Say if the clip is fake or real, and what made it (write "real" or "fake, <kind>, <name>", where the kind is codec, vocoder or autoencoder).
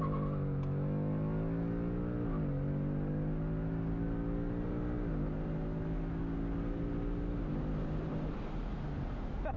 real